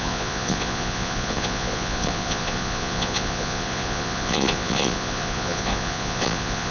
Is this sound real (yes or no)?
no